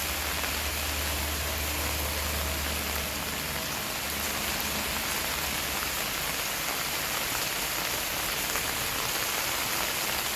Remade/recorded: recorded